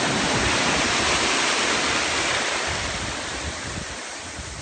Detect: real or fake real